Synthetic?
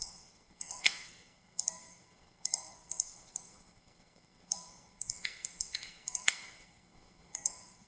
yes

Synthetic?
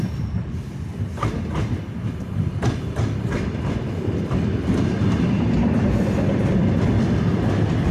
no